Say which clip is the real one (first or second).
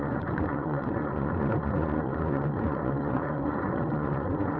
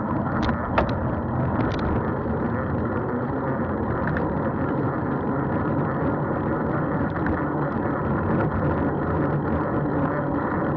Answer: second